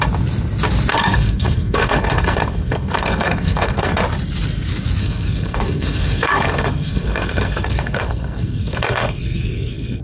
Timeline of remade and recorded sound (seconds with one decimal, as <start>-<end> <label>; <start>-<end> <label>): 0.0-0.9 recorded; 0.9-3.9 remade; 3.9-5.0 recorded; 5.0-10.0 remade